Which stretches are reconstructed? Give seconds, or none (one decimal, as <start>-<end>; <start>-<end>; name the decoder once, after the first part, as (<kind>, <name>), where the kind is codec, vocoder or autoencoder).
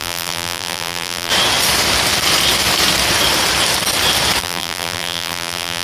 0.0-1.3 (vocoder, BigVGAN v2); 4.4-5.8